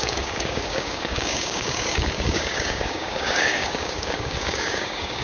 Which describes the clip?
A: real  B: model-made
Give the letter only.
B